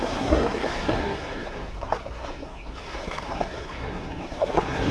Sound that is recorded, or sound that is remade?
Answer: remade